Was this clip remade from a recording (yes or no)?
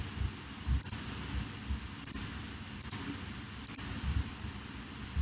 yes